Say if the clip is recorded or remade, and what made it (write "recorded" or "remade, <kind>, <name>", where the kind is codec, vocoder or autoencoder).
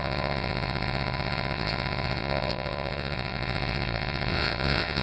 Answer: remade, vocoder, WaveNeXt